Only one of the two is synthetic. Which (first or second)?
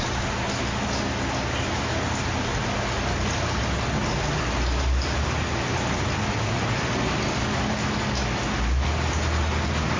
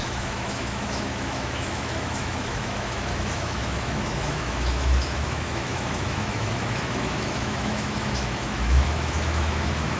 second